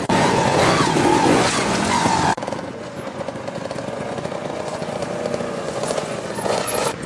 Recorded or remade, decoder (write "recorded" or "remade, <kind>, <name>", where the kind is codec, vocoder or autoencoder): remade, vocoder, Vocos